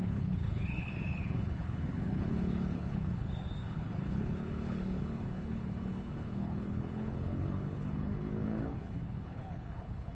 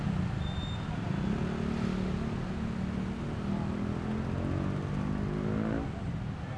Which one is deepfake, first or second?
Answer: first